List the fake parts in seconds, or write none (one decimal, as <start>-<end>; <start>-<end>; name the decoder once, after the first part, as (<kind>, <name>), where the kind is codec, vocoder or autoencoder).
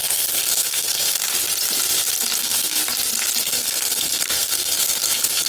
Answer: 0.0-1.2 (codec, SNAC); 2.4-2.8; 3.4-5.5